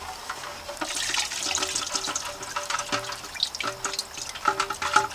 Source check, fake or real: real